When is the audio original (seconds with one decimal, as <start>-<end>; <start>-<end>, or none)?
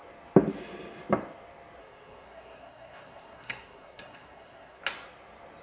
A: 0.0-1.8; 4.8-5.6